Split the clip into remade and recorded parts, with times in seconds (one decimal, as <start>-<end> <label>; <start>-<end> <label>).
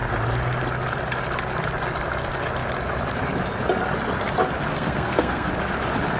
0.0-4.7 recorded; 4.7-5.5 remade; 5.5-6.2 recorded